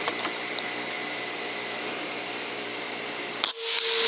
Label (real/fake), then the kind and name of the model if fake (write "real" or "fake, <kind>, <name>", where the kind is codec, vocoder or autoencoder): real